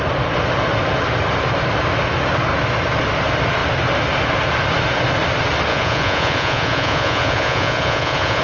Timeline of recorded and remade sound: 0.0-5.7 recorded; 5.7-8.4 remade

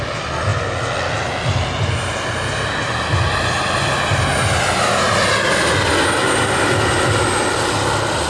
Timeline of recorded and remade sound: 0.0-8.3 recorded

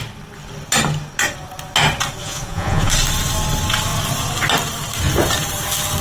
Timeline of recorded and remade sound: 0.0-2.2 recorded; 2.2-2.9 remade; 2.9-6.0 recorded